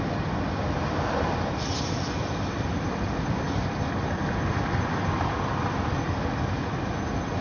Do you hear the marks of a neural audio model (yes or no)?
no